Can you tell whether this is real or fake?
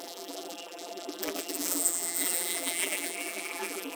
fake